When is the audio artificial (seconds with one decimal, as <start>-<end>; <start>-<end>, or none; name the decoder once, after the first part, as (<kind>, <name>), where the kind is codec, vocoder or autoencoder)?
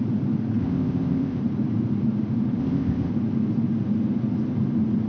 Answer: 0.6-1.4 (codec, ZipCodec); 2.6-3.1